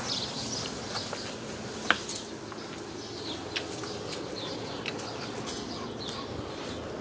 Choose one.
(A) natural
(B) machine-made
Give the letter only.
A